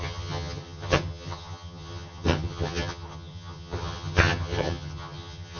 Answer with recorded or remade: remade